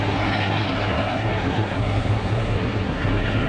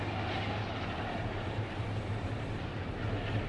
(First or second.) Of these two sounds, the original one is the second